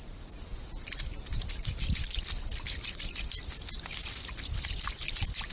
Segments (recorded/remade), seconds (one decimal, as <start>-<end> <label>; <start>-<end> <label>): 0.0-5.5 recorded